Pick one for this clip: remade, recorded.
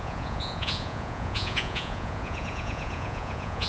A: remade